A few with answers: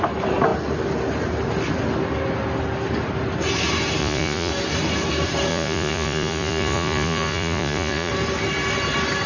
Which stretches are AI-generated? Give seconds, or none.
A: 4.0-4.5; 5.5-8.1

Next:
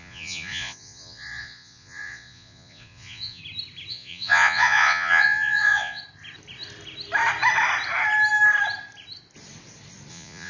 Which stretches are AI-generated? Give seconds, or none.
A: 0.0-3.4; 3.9-6.0; 10.1-10.5